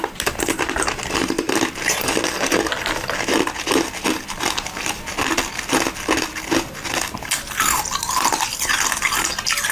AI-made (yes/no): no